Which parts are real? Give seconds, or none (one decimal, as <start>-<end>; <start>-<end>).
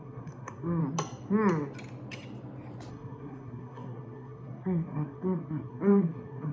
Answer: 0.8-2.9